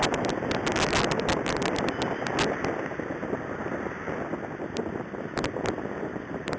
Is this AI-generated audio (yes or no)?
no